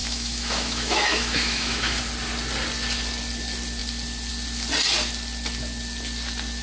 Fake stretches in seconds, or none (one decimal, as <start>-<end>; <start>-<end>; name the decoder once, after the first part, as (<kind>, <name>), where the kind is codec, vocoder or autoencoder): 0.0-2.0 (autoencoder, DAC-VAE)